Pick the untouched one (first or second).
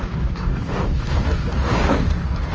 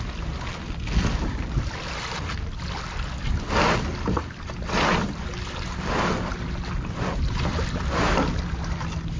second